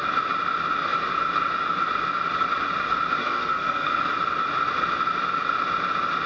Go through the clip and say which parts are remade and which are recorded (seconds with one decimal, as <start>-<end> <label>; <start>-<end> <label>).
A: 0.0-3.2 recorded; 3.2-4.0 remade; 4.0-6.3 recorded